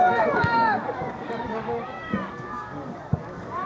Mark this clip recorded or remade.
remade